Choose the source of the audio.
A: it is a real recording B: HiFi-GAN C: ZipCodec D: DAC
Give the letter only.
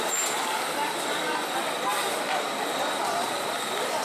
A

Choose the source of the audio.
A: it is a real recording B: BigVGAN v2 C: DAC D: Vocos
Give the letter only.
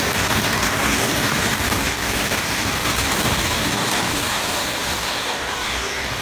C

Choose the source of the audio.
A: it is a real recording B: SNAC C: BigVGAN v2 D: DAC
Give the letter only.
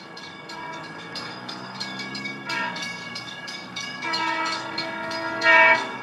D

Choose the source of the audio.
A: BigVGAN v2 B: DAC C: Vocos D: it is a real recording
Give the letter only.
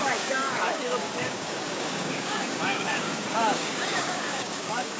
B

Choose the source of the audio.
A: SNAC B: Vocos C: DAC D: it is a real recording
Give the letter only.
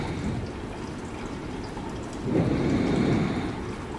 D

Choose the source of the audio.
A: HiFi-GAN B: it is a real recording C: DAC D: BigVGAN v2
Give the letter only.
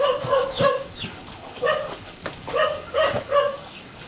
C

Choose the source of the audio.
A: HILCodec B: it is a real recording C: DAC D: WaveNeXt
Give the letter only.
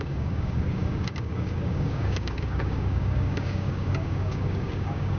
C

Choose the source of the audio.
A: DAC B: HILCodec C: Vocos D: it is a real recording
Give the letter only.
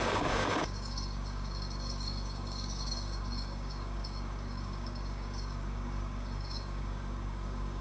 A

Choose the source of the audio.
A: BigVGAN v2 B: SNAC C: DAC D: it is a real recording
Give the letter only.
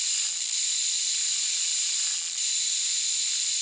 D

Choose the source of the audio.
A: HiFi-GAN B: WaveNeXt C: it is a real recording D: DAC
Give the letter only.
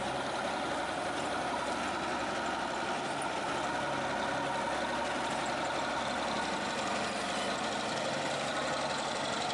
C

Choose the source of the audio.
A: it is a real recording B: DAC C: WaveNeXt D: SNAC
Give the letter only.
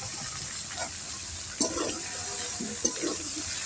A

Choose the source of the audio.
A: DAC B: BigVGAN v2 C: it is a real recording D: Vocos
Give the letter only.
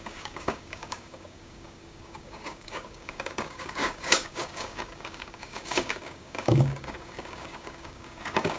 A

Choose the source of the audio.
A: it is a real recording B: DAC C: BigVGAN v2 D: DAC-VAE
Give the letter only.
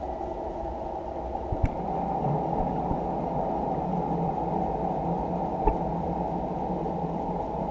A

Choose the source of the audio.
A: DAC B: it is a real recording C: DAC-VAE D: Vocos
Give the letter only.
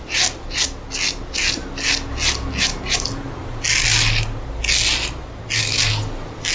B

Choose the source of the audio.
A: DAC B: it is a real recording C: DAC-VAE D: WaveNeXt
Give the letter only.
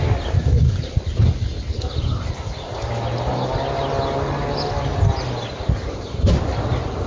B